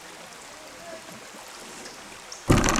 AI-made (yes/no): no